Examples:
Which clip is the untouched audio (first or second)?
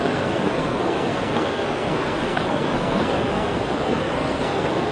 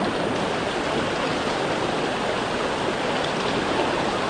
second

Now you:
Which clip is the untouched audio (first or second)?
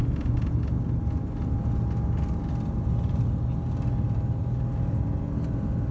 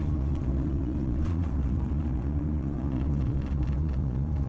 first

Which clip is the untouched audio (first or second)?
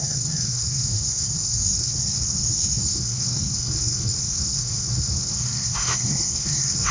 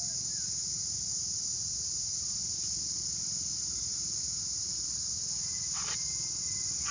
second